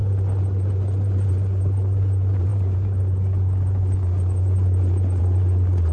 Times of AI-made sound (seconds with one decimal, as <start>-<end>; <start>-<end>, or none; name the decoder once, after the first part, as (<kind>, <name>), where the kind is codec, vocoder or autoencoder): none

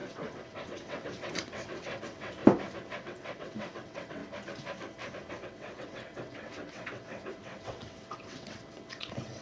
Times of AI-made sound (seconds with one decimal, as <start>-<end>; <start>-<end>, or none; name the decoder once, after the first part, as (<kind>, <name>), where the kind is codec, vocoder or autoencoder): 0.0-2.4 (vocoder, WaveNeXt); 2.9-4.2; 5.3-9.4

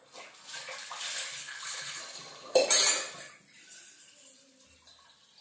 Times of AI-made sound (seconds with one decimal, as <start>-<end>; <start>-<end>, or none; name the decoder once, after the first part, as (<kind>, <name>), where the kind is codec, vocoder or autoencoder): 1.4-2.0 (codec, HILCodec)

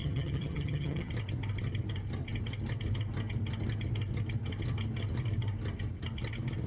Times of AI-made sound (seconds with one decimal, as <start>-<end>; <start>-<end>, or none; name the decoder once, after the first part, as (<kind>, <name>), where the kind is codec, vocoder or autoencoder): 0.0-1.1 (vocoder, HiFi-GAN)

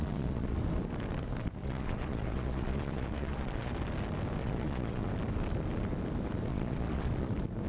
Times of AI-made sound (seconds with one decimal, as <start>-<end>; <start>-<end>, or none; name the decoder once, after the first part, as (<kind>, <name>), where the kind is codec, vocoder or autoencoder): 0.0-0.6 (vocoder, Vocos); 1.6-3.7; 4.4-5.1; 6.5-7.3

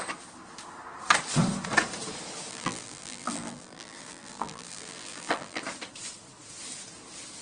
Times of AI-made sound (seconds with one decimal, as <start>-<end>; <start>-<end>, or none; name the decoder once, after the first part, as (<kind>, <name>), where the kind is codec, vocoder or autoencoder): 2.5-5.6 (vocoder, BigVGAN v2)